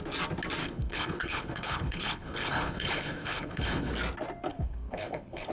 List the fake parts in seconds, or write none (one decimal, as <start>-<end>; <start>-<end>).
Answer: 0.6-3.9; 4.5-5.5